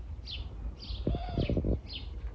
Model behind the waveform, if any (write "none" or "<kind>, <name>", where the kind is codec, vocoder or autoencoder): none